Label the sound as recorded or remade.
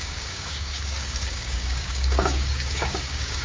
remade